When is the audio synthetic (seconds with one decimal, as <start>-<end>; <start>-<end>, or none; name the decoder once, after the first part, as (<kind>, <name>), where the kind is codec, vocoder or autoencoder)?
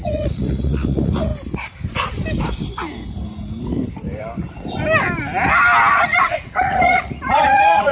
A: 0.0-1.3 (vocoder, Vocos); 5.9-7.9